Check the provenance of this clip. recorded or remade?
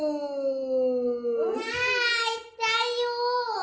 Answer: recorded